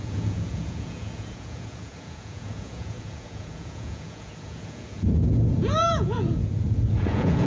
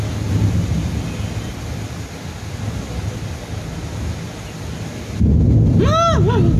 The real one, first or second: second